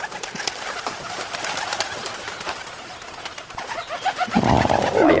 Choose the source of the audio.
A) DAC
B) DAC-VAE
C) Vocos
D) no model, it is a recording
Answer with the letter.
D